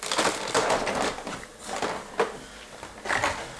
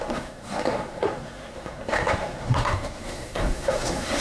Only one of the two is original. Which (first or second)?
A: first